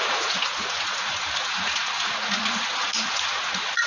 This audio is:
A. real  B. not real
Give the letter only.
B